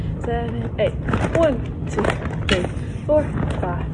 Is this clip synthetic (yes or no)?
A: no